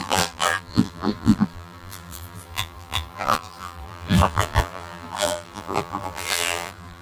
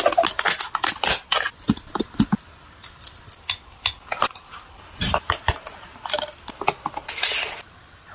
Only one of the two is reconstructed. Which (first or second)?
first